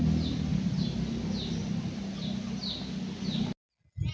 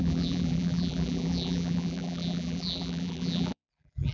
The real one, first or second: first